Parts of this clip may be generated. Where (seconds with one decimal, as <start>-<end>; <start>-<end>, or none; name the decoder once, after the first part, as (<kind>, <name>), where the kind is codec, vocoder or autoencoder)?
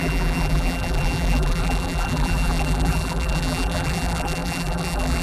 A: 0.0-5.2 (vocoder, BigVGAN v2)